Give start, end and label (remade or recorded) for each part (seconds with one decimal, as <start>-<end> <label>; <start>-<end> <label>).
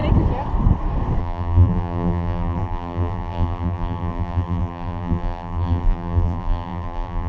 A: 0.0-1.2 recorded; 1.2-7.3 remade